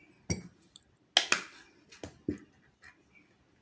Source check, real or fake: real